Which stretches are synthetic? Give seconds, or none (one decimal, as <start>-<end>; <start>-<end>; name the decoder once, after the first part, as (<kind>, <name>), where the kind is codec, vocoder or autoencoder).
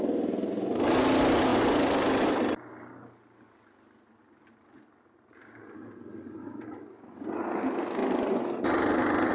none